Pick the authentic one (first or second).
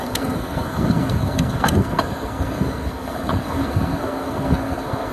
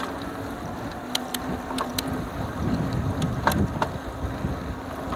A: second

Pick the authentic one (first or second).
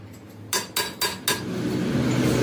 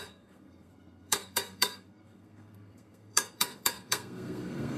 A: first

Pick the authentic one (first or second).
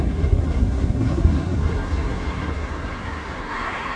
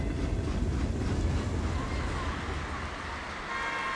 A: second